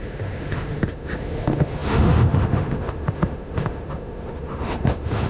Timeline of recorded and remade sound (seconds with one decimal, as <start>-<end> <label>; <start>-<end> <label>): 0.0-5.3 remade